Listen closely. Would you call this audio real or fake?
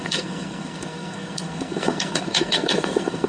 fake